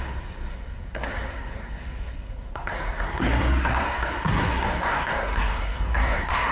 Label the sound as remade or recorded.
remade